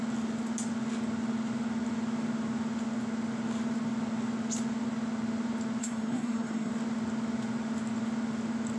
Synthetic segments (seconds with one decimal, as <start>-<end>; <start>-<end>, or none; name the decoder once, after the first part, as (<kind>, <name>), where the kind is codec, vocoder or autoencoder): 5.8-6.7 (codec, SNAC)